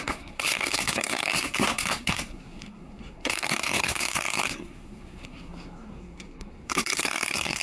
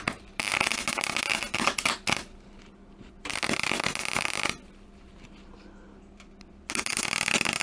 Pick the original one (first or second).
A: second